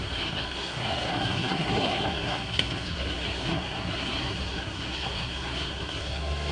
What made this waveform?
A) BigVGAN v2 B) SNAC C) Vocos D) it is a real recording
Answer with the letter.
B